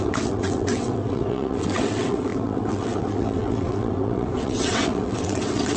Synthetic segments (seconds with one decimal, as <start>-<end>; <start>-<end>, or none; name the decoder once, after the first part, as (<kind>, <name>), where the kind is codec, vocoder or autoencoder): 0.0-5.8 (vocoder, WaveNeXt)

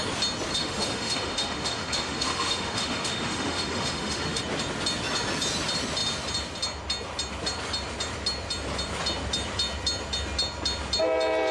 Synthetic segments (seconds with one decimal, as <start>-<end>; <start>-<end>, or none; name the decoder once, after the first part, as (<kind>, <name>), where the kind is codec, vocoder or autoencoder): 0.5-4.4 (autoencoder, DAC-VAE)

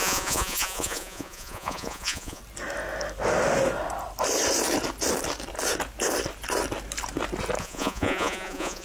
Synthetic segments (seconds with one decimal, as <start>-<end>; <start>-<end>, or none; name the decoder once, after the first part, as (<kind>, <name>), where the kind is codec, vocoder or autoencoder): 0.0-2.4 (vocoder, Vocos); 7.6-8.8